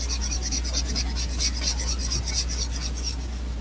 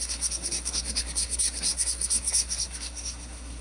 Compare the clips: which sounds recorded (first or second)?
first